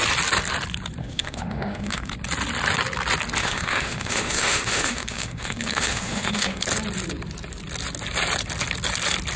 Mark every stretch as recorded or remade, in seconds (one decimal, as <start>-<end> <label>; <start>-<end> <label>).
0.0-1.0 recorded; 1.0-2.1 remade; 2.1-3.4 recorded; 3.4-6.6 remade; 6.6-9.4 recorded